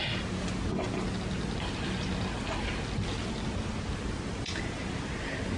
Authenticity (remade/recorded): recorded